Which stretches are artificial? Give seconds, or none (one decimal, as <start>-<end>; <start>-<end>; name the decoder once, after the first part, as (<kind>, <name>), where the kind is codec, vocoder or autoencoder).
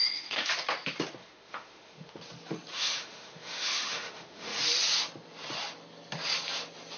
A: 0.0-0.5 (autoencoder, DAC-VAE); 1.2-2.2; 2.7-4.6